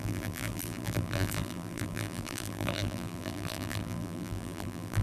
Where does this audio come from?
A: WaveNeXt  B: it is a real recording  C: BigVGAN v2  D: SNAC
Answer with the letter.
C